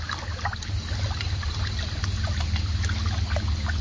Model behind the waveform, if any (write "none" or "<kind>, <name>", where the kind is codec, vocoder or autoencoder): none